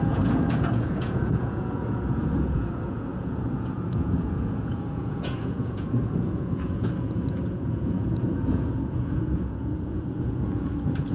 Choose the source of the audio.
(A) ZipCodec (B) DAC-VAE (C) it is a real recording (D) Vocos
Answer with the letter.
D